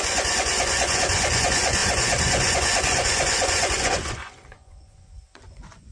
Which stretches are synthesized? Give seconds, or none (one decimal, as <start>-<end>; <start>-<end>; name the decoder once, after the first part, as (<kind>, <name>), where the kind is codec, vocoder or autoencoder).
0.0-5.9 (vocoder, Vocos)